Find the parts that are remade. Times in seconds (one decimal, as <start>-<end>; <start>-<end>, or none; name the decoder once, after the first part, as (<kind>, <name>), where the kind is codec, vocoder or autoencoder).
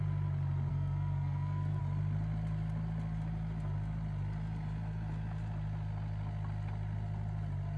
0.7-1.8 (codec, SNAC)